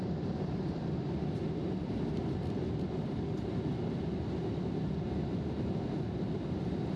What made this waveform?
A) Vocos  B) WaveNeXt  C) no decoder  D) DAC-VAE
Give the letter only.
C